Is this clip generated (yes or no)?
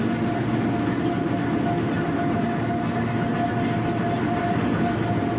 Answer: no